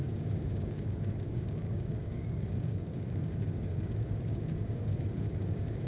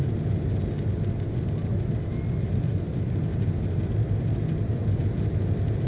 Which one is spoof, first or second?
first